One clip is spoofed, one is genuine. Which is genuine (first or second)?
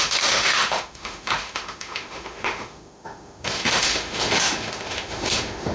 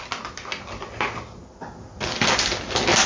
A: second